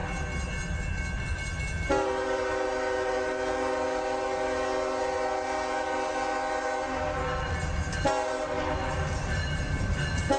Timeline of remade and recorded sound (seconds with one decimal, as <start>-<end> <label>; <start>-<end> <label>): 0.0-10.4 recorded